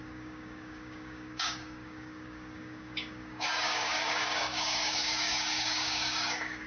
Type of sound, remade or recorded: remade